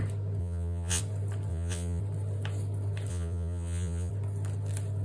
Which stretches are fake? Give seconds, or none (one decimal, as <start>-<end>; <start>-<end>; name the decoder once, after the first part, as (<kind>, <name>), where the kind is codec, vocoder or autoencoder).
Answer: 0.4-1.0 (vocoder, Vocos); 1.5-2.0; 3.1-4.1